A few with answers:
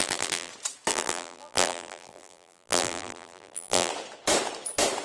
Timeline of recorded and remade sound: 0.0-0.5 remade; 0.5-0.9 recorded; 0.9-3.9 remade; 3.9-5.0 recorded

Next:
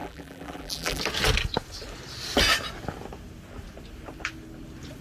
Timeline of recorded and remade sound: 0.0-1.0 remade; 1.0-5.0 recorded

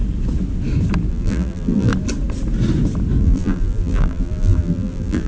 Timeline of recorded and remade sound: 0.0-1.1 recorded; 1.1-1.9 remade; 1.9-3.2 recorded; 3.2-5.3 remade

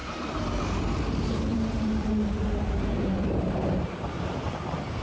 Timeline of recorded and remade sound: 0.0-0.8 remade; 0.8-1.5 recorded; 1.5-4.5 remade; 4.5-5.0 recorded